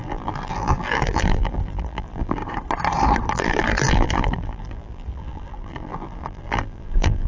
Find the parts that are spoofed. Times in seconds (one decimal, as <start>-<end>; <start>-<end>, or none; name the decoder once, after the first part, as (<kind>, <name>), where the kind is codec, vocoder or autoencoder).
0.0-2.4 (vocoder, BigVGAN v2); 3.3-7.3